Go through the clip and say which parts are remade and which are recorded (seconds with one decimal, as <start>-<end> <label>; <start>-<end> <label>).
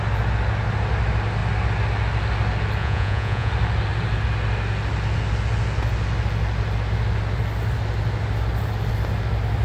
0.0-2.8 recorded; 2.8-3.5 remade; 3.5-9.6 recorded